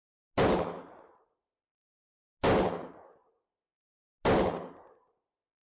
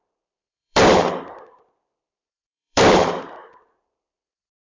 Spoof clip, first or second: second